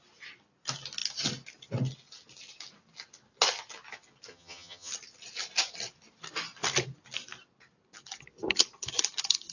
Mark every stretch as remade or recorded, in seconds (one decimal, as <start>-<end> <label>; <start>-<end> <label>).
0.0-4.3 recorded; 4.3-4.9 remade; 4.9-9.5 recorded